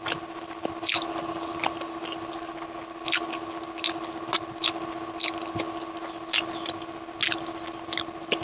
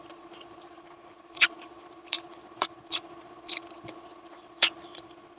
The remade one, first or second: second